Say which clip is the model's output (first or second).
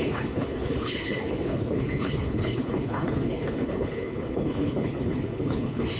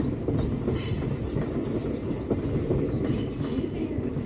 first